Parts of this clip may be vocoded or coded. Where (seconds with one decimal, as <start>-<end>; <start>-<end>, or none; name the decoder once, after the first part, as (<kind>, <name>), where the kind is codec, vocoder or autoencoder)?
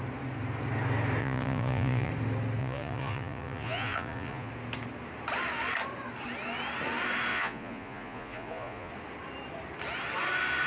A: 1.2-2.1 (vocoder, Vocos); 2.6-4.5; 7.3-8.9